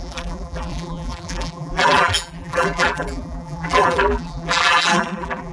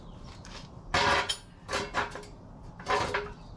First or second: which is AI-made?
first